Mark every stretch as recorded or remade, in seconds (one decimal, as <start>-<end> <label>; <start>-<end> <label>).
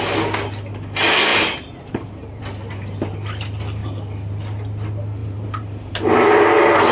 0.0-1.3 recorded; 1.3-2.4 remade; 2.4-5.2 recorded; 5.2-5.9 remade; 5.9-6.9 recorded